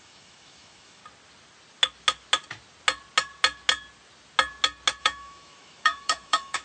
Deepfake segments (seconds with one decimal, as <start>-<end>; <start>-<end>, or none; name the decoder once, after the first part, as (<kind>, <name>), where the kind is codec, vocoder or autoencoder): 0.0-1.0 (autoencoder, DAC-VAE); 5.0-6.6